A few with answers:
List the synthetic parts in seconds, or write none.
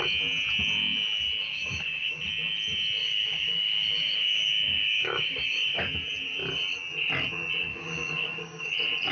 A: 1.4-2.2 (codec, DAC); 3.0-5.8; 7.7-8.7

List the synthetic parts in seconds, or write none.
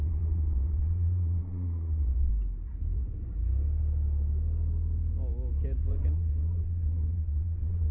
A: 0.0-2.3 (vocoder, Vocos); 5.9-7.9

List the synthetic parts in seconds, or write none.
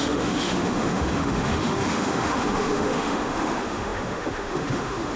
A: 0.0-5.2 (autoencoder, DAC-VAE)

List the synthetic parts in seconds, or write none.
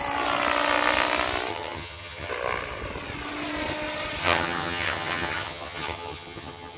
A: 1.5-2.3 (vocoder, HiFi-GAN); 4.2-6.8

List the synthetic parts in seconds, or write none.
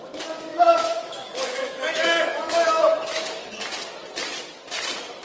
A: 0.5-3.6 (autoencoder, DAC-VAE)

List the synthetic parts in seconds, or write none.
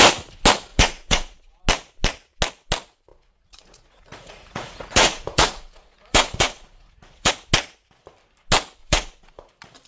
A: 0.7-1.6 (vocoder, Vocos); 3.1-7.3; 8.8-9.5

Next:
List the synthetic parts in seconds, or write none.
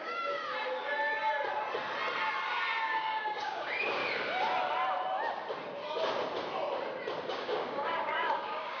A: 0.0-0.4 (codec, DAC); 2.8-4.0; 7.3-8.8